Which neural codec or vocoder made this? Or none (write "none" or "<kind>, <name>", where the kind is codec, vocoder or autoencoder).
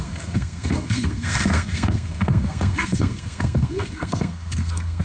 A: codec, SNAC